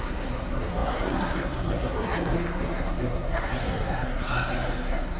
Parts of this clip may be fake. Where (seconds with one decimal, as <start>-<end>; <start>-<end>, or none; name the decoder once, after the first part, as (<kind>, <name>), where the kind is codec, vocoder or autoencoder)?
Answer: 0.0-5.2 (codec, SNAC)